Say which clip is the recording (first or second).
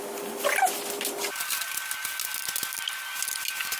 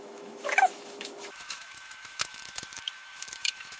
first